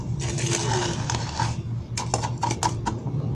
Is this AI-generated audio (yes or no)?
no